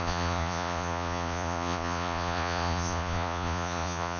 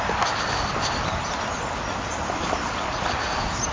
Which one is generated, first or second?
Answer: first